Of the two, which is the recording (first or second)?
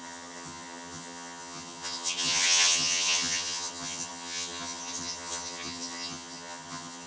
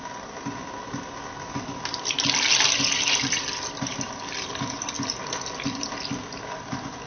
second